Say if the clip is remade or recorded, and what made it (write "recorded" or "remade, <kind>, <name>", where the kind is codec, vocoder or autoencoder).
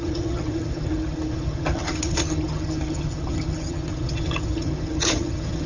remade, vocoder, HiFi-GAN